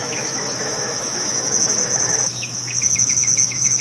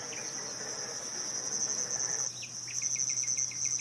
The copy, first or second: first